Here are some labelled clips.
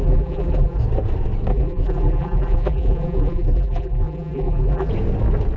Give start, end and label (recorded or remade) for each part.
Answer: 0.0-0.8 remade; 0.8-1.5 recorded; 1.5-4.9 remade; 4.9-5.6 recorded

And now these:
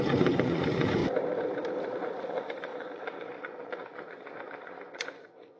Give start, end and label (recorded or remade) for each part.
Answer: 0.0-1.0 remade; 1.0-1.9 recorded; 1.9-5.6 remade

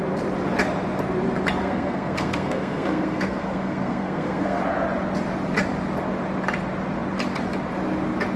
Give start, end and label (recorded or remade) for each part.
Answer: 0.0-1.6 recorded; 1.6-4.6 remade; 4.6-8.4 recorded